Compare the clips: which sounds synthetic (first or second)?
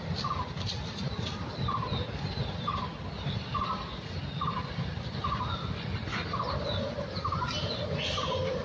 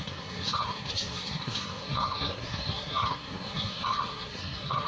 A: second